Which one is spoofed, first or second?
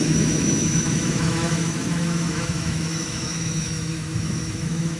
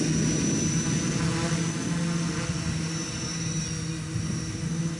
first